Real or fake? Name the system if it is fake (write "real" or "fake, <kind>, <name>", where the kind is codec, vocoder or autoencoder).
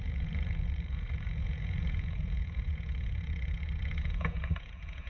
fake, vocoder, Vocos